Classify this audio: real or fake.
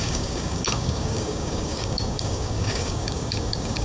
fake